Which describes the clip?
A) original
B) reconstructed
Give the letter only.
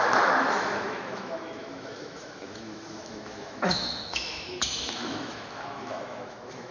B